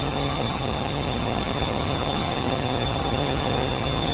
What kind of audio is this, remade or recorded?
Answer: remade